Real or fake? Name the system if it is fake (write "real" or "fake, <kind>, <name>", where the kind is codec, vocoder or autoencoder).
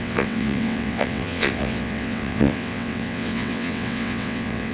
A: fake, vocoder, WaveNeXt